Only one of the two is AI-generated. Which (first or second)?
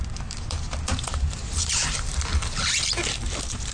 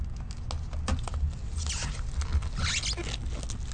first